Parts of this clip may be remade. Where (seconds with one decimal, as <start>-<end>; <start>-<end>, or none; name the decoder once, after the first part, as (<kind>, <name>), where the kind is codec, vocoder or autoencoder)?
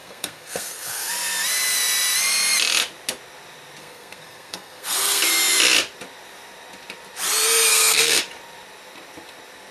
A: 0.0-1.1 (codec, SNAC); 3.8-5.2; 7.7-8.2